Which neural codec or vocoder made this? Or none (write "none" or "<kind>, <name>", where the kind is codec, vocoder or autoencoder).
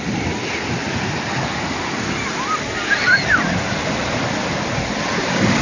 none